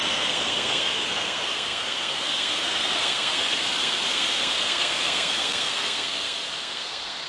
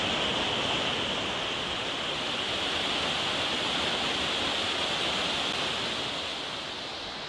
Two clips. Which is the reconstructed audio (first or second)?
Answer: first